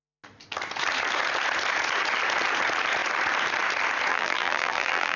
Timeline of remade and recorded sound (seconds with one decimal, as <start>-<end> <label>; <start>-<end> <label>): 0.0-4.1 recorded; 4.1-5.2 remade